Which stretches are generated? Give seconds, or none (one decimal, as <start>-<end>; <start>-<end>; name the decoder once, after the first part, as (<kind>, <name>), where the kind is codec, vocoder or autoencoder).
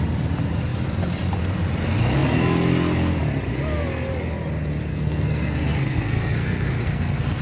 4.9-7.4 (codec, SNAC)